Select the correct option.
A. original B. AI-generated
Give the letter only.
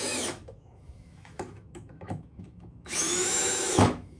B